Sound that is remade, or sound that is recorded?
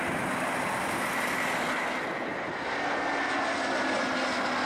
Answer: recorded